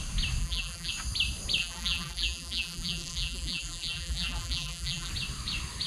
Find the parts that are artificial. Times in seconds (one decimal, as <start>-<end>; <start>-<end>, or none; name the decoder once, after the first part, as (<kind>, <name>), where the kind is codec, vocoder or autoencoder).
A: 0.4-0.9 (vocoder, BigVGAN v2); 1.6-5.1